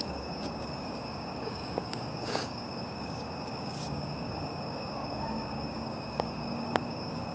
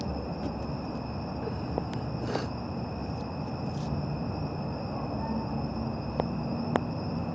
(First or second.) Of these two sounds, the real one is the second